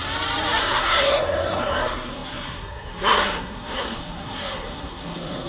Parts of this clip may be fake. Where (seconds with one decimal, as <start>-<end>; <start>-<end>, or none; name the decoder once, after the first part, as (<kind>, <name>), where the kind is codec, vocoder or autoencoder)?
0.6-5.5 (codec, SNAC)